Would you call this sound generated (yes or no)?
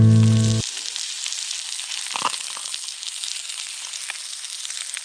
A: no